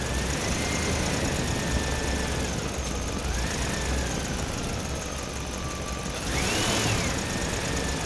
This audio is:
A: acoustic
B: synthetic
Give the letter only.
A